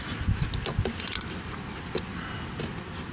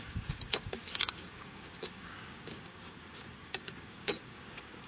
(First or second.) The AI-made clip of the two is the second